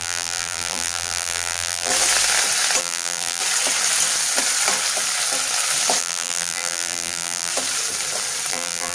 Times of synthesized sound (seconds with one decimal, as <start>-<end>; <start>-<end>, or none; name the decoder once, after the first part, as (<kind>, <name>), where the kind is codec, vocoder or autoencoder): 0.0-1.9 (vocoder, BigVGAN v2); 2.8-3.4; 6.0-7.5; 8.5-8.9